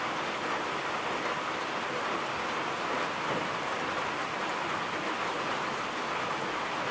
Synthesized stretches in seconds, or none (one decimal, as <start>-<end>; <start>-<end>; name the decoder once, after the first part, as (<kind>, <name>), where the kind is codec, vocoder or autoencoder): 3.7-4.7 (vocoder, BigVGAN v2)